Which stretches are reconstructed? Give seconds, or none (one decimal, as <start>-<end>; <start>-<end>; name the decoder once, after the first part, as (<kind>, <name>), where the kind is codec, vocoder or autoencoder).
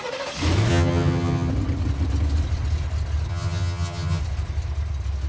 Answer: 0.7-1.5 (vocoder, HiFi-GAN); 3.3-4.2